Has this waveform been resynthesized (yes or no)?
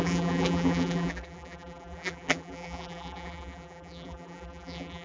yes